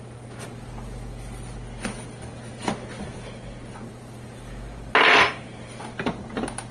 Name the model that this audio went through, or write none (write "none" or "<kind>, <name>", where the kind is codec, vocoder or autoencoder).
none